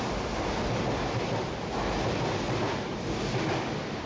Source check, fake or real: real